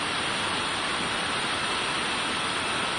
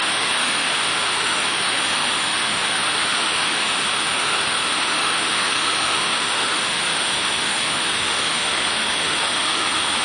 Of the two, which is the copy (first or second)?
second